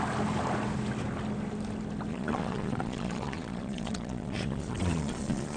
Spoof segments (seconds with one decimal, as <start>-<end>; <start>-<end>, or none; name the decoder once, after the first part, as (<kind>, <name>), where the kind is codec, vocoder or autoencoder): 2.1-5.6 (vocoder, Vocos)

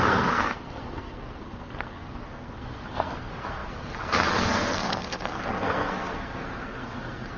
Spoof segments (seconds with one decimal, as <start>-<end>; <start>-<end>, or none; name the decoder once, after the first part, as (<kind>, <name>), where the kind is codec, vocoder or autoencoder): 0.0-7.4 (codec, SNAC)

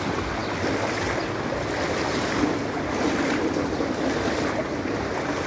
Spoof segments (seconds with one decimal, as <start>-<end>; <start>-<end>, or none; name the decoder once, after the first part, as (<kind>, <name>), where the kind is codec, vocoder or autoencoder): none

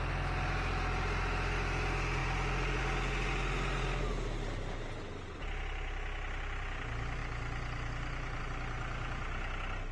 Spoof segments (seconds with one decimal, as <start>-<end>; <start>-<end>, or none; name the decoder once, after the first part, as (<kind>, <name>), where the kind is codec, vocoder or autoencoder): none

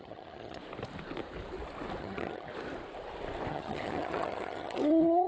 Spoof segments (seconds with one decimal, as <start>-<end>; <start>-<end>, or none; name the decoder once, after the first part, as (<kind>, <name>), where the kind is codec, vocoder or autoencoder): 0.0-0.6 (vocoder, HiFi-GAN); 2.0-2.5; 3.5-5.3

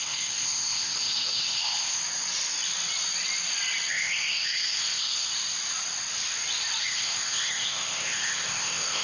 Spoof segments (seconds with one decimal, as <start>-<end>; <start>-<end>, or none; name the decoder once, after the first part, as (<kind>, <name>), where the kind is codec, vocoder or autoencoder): 0.0-2.0 (codec, ZipCodec); 3.9-5.3; 6.8-9.0